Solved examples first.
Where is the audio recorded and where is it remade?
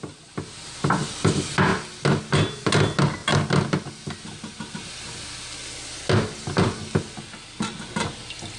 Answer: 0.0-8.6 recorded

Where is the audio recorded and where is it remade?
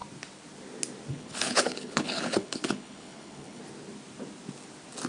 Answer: 0.0-1.1 recorded; 1.1-3.6 remade; 3.6-5.1 recorded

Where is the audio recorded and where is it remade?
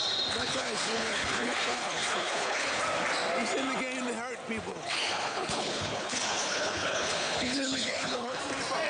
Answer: 0.0-0.4 recorded; 0.4-2.8 remade; 2.8-4.7 recorded; 4.7-8.4 remade; 8.4-8.9 recorded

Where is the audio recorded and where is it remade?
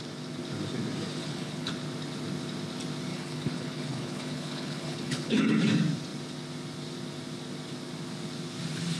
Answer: 0.0-1.2 recorded; 1.2-1.7 remade; 1.7-3.1 recorded; 3.1-5.4 remade; 5.4-9.0 recorded